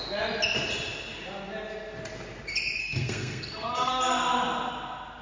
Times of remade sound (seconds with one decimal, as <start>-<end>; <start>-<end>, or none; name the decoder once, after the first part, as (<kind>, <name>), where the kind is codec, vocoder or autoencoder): 2.8-4.0 (codec, SNAC)